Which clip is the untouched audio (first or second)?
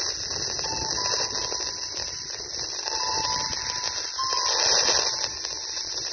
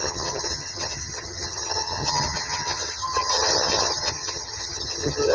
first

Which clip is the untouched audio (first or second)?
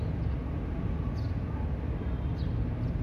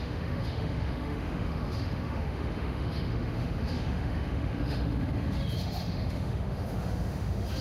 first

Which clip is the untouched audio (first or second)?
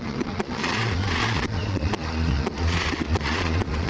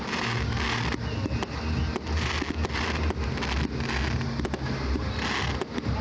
second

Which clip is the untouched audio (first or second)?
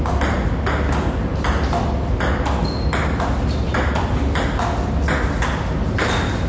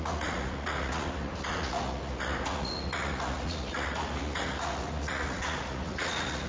first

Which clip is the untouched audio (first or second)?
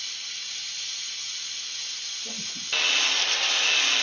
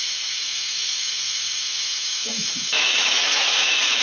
first